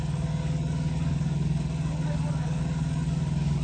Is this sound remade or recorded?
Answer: remade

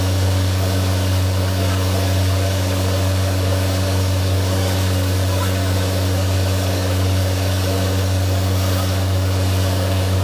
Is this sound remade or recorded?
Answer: remade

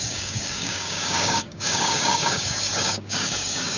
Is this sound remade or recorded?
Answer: remade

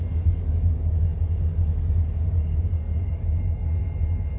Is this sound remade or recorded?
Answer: remade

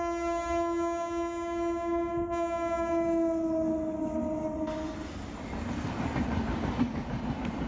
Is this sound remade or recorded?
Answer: recorded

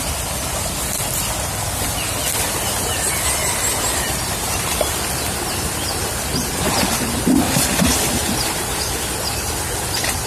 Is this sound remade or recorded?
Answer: recorded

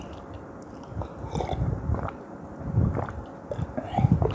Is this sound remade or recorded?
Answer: recorded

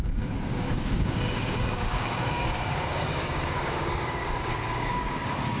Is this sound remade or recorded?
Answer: remade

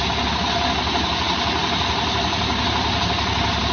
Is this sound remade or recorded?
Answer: recorded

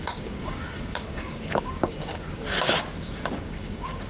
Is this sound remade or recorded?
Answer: remade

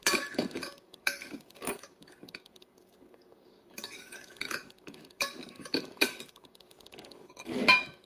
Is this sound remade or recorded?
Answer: remade